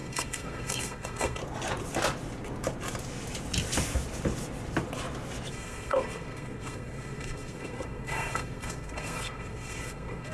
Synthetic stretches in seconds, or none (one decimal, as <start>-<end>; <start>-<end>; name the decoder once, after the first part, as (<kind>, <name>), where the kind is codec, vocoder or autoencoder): 0.0-1.4 (codec, SNAC); 5.5-10.3